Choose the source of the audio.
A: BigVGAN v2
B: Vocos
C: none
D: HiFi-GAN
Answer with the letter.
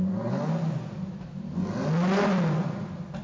C